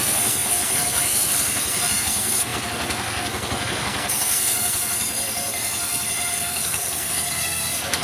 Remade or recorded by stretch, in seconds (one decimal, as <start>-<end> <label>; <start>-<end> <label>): 0.0-8.0 remade